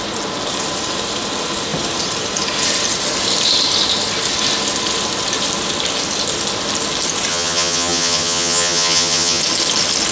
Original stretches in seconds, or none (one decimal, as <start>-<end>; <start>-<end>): 0.0-7.3; 9.4-10.1